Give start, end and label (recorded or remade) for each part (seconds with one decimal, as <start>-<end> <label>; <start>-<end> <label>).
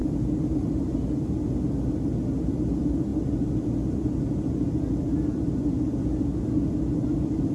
0.0-7.5 recorded